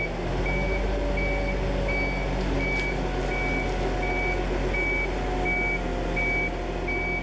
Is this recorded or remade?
recorded